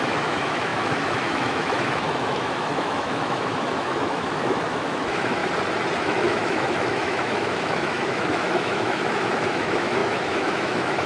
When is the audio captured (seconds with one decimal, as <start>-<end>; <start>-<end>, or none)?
5.4-6.0